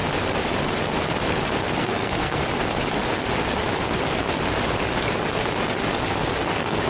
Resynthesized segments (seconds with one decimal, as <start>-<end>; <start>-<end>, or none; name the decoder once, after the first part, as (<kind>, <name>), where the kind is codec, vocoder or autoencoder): 1.8-2.4 (codec, SNAC); 6.5-6.9